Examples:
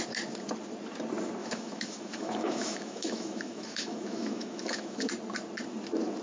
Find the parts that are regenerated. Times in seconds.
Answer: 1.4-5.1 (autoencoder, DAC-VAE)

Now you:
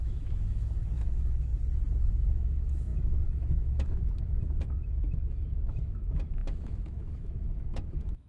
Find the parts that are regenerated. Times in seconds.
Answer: 0.0-1.5 (autoencoder, DAC-VAE); 2.1-8.3

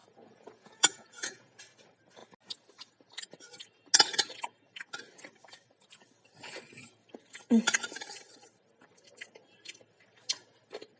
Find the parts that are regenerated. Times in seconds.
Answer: 0.0-1.6 (vocoder, Vocos)

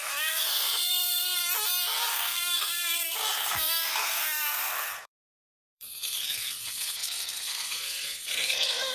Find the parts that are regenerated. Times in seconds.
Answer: 0.0-1.4 (codec, SNAC); 2.1-8.9

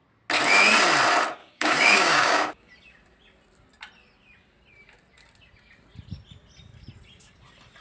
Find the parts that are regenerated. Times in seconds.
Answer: 1.4-2.7 (codec, DAC)

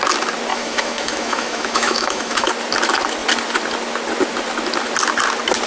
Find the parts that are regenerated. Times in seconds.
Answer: 0.5-2.5 (autoencoder, DAC-VAE)

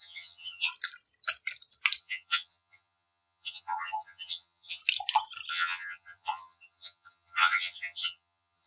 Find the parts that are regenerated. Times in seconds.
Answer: 0.0-0.7 (vocoder, HiFi-GAN); 2.0-4.8; 5.5-8.7